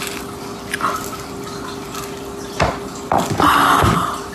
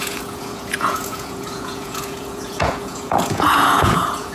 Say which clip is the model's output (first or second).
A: second